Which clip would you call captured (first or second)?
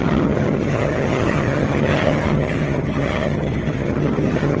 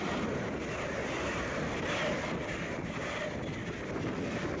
second